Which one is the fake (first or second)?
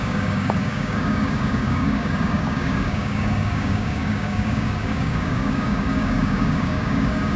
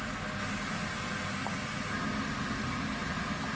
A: first